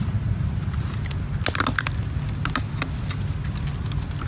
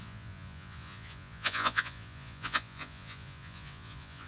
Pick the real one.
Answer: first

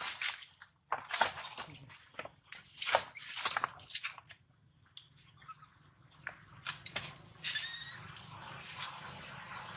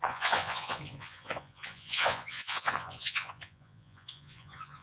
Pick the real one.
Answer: first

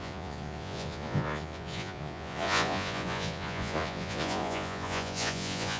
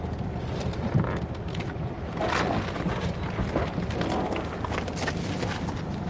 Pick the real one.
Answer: second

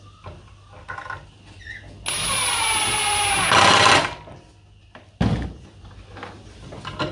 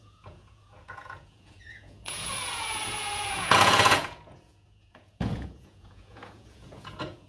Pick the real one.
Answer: first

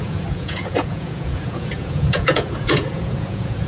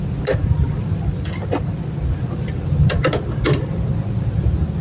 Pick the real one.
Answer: second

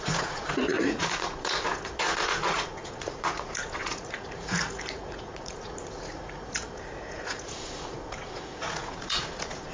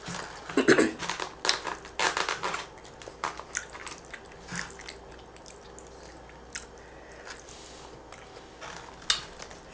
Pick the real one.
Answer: second